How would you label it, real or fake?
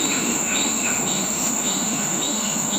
fake